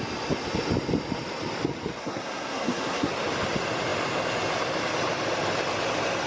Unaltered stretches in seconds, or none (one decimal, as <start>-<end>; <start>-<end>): 0.0-2.0; 3.1-6.3